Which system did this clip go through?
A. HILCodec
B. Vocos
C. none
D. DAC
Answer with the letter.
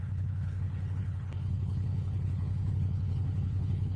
A